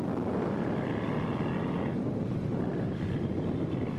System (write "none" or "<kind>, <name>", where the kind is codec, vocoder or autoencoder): none